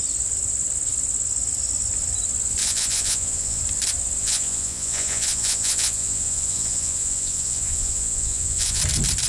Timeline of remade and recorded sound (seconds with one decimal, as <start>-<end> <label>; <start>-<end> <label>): 0.0-2.6 recorded; 2.6-3.6 remade; 3.6-4.2 recorded; 4.2-8.8 remade; 8.8-9.3 recorded